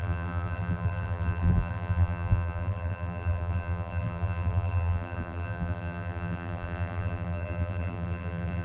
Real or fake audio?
fake